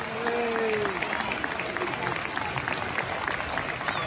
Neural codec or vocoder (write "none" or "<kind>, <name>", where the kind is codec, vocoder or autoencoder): none